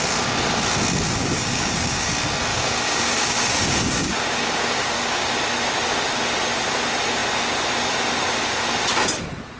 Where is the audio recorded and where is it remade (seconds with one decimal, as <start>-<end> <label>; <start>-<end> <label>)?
0.0-1.2 recorded; 1.2-2.1 remade; 2.1-2.5 recorded; 2.5-5.3 remade; 5.3-9.6 recorded